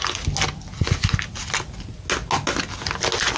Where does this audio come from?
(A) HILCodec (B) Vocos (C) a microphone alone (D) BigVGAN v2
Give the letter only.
C